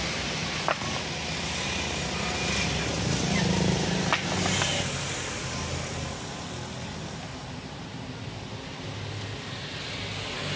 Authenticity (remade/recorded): recorded